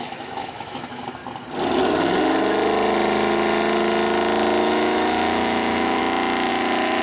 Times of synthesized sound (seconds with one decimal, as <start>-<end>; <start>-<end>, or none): 0.0-1.2; 4.6-6.0; 6.5-7.0